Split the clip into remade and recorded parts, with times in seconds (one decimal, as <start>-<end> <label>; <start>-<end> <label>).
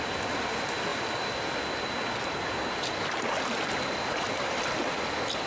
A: 0.0-5.5 recorded